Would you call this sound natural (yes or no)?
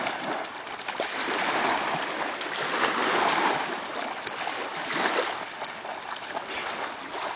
yes